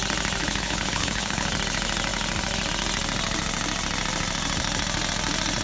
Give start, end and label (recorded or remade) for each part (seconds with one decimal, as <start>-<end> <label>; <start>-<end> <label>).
0.0-0.4 recorded; 0.4-1.5 remade; 1.5-5.6 recorded